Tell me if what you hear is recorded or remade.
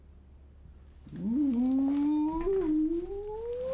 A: recorded